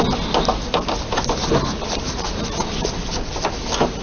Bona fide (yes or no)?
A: yes